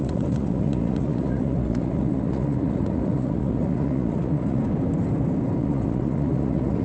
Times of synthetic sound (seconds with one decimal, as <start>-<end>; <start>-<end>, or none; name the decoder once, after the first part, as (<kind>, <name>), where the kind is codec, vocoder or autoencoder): 0.0-4.6 (vocoder, Vocos); 5.6-6.8